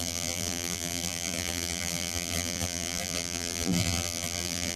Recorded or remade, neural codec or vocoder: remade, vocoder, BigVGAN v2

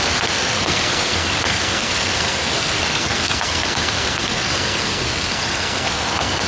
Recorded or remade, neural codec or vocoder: remade, codec, SNAC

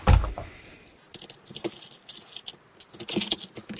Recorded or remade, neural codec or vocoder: recorded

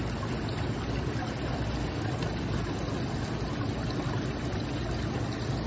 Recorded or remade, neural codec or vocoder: recorded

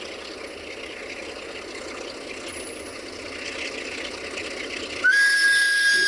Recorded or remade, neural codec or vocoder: recorded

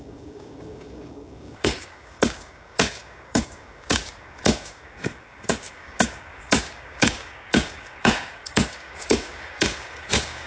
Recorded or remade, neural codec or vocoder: remade, codec, DAC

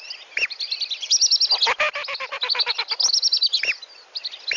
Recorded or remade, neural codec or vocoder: recorded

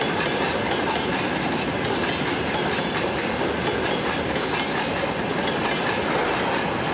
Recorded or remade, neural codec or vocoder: recorded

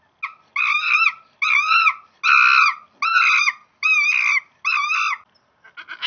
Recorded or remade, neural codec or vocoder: recorded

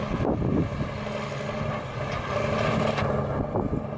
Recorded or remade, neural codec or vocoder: recorded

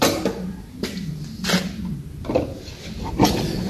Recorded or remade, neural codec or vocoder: recorded